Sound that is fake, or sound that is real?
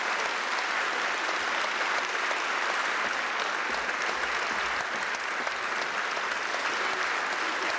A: real